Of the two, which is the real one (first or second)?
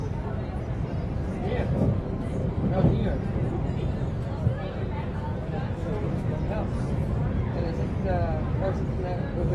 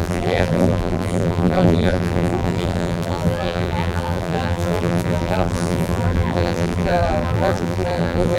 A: first